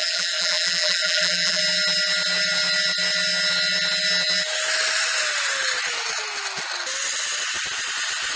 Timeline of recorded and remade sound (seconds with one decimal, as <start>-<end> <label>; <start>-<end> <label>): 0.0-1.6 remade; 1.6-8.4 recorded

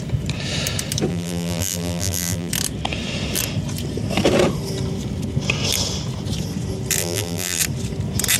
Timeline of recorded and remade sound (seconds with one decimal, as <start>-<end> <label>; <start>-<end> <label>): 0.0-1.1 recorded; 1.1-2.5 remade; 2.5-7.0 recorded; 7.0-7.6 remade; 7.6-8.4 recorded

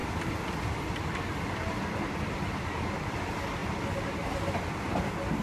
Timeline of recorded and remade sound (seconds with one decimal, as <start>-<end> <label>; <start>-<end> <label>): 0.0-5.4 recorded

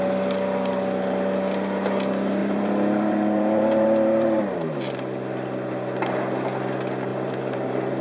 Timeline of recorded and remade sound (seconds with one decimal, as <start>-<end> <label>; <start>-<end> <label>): 0.0-2.4 recorded; 2.4-4.9 remade; 4.9-7.1 recorded; 7.1-8.0 remade

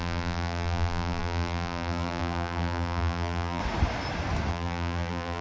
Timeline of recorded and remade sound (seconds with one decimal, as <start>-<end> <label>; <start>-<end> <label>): 0.0-3.6 remade; 3.6-4.5 recorded; 4.5-5.4 remade

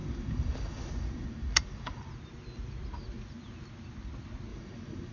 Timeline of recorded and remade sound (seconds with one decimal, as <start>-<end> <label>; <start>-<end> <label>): 0.0-2.1 remade; 2.1-4.5 recorded; 4.5-5.1 remade

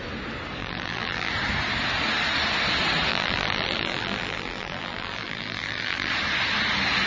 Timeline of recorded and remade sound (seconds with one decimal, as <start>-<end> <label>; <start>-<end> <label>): 0.0-0.6 recorded; 0.6-1.3 remade; 1.3-3.1 recorded; 3.1-6.1 remade; 6.1-7.1 recorded